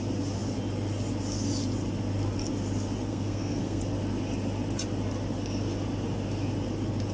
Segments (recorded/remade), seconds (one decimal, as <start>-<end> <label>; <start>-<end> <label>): 0.0-3.1 recorded; 3.1-3.8 remade; 3.8-7.1 recorded